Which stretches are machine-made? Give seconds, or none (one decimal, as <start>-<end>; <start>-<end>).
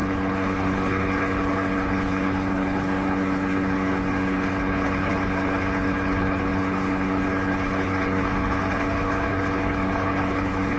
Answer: 0.0-10.8